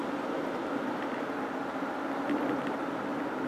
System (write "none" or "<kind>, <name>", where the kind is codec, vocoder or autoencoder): none